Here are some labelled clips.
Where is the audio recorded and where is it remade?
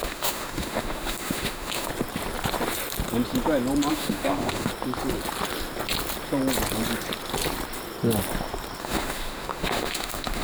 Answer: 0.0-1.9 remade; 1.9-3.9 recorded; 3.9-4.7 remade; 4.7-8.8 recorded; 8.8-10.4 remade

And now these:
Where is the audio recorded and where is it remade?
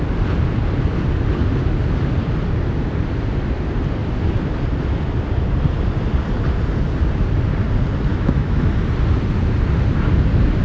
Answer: 0.0-8.1 recorded; 8.1-8.7 remade; 8.7-10.6 recorded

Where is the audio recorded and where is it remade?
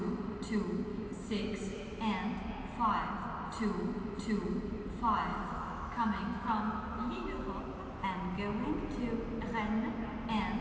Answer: 0.0-0.9 recorded; 0.9-1.4 remade; 1.4-5.3 recorded; 5.3-7.6 remade; 7.6-10.6 recorded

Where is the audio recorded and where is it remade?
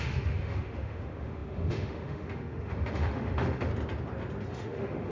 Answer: 0.0-3.7 remade; 3.7-4.5 recorded; 4.5-5.1 remade